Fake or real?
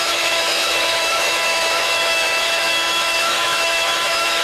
fake